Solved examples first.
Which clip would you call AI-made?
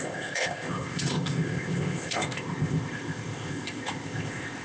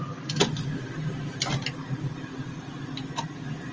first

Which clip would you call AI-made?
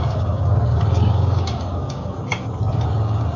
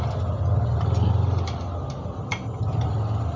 first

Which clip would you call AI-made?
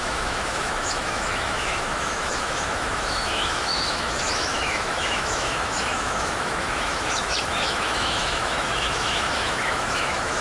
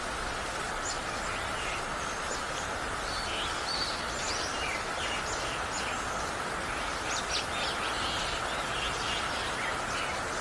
first